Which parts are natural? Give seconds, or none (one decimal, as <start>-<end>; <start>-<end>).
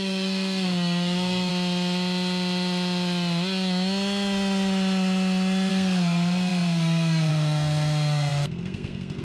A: 1.5-5.7